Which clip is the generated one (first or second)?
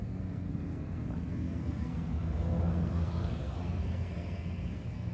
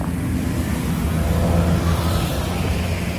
first